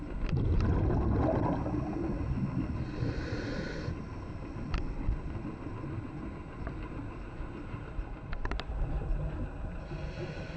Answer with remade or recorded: recorded